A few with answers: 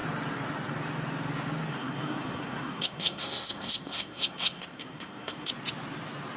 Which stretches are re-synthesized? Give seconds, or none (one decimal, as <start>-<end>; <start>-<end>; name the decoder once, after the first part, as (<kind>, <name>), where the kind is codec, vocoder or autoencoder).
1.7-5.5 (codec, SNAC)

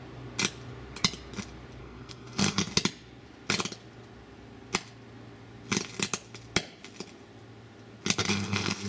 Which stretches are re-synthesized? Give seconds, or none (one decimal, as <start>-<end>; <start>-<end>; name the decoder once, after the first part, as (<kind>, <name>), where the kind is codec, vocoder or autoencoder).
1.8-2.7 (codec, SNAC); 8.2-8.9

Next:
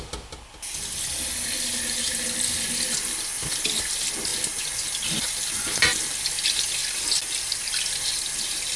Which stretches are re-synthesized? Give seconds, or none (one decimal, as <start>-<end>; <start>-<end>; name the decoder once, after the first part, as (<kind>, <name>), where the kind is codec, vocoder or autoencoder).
none